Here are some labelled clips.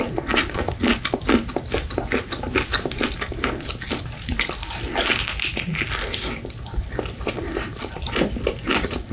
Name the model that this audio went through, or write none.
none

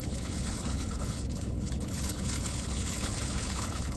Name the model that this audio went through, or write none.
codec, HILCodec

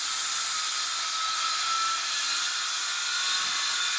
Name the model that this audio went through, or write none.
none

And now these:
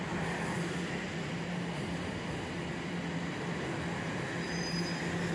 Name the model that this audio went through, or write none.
none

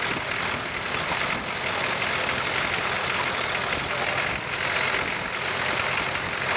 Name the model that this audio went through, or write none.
none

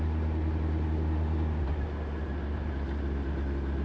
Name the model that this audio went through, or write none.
none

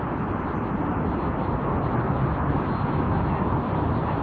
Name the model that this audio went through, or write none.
none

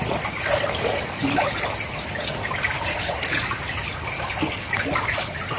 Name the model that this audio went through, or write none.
none